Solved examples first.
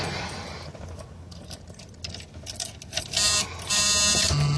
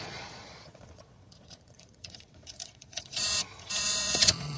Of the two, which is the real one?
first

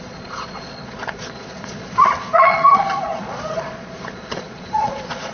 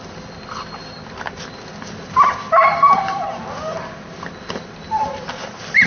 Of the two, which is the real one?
second